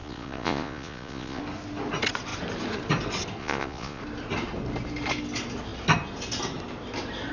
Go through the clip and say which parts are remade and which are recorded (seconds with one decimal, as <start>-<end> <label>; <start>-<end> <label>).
0.0-1.4 remade; 1.4-3.4 recorded; 3.4-4.0 remade; 4.0-7.3 recorded